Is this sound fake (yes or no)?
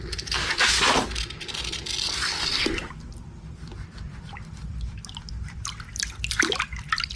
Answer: no